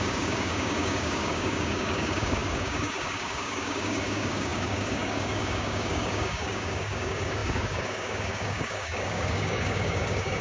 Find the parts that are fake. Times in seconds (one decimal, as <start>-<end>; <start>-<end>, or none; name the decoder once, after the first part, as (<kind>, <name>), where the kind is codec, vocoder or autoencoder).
0.0-10.4 (codec, DAC)